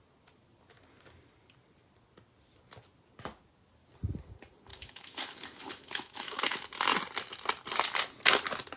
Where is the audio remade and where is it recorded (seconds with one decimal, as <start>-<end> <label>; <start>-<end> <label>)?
0.0-4.7 recorded; 4.7-6.6 remade; 6.6-8.8 recorded